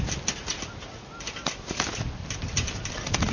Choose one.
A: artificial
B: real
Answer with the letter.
B